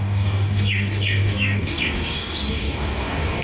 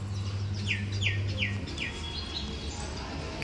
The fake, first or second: first